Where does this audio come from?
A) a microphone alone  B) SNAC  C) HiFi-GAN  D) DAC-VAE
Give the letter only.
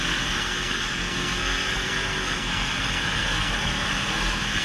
B